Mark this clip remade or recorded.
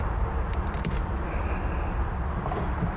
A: recorded